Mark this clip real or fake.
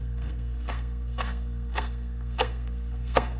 fake